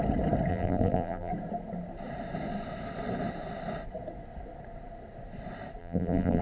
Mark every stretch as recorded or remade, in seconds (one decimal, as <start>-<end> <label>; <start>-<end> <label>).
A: 0.0-0.5 recorded; 0.5-1.3 remade; 1.3-5.8 recorded; 5.8-6.4 remade